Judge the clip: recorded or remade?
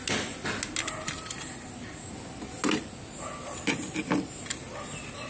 recorded